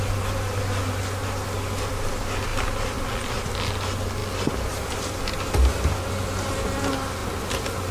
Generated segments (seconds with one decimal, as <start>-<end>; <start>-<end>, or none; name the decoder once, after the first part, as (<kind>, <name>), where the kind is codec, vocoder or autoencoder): none